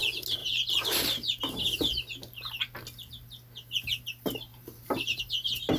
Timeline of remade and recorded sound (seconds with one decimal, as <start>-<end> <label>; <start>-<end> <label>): 0.0-0.4 recorded; 0.4-1.6 remade; 1.6-4.5 recorded; 4.5-5.2 remade; 5.2-5.8 recorded